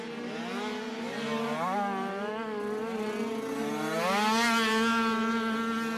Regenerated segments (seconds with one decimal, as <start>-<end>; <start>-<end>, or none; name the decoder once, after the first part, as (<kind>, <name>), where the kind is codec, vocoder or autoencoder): none